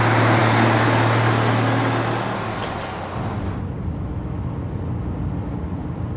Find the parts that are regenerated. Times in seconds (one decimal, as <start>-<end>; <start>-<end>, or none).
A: none